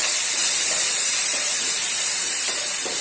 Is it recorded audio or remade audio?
recorded